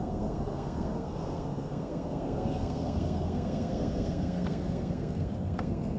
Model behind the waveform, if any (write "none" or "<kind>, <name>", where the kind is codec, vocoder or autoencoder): codec, SNAC